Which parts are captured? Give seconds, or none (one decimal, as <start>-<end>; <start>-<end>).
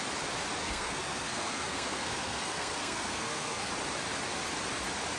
0.0-0.6; 3.7-5.2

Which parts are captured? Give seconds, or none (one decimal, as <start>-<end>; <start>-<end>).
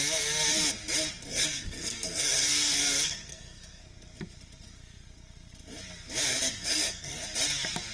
0.0-1.3; 3.8-6.3; 7.1-7.9